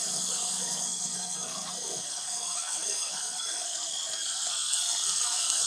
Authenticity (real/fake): fake